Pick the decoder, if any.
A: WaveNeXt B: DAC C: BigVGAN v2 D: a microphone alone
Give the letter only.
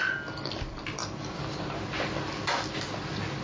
D